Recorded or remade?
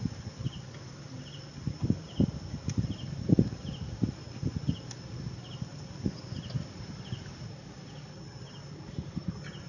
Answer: recorded